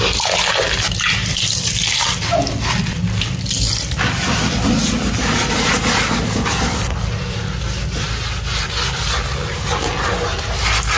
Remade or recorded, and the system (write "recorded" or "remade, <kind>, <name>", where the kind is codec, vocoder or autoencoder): recorded